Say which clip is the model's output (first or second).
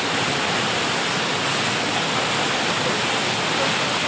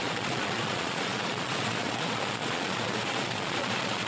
second